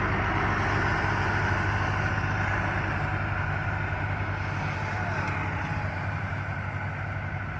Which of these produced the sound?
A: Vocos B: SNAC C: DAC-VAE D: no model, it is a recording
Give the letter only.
D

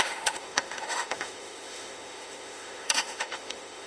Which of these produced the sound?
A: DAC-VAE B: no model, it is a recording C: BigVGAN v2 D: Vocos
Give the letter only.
A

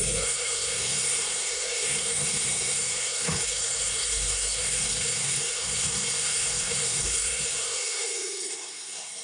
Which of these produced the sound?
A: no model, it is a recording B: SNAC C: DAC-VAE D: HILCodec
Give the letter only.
B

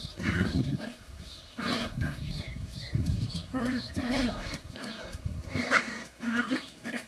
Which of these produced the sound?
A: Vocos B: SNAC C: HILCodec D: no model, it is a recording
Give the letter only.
B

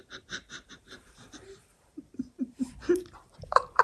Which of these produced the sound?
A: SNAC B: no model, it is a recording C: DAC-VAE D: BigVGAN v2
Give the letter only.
D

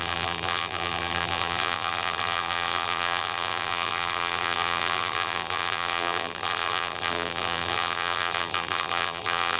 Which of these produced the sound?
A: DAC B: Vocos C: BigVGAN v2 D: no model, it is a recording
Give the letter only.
C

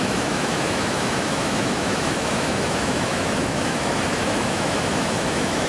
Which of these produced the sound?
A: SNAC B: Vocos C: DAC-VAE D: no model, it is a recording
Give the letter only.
C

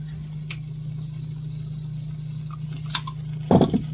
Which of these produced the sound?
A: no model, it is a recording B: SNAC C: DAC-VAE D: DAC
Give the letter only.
A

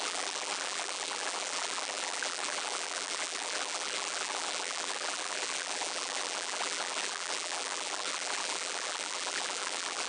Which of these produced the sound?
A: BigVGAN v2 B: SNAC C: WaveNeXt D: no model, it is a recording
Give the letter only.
A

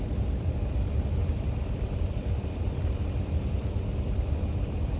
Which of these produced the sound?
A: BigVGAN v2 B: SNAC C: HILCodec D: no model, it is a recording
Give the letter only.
A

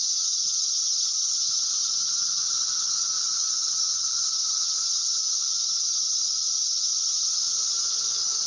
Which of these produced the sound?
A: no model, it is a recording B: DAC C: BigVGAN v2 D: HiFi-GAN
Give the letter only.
D